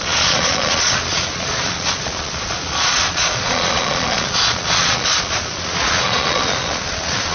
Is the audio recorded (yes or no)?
no